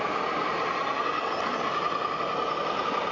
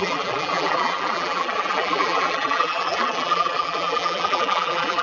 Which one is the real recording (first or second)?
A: first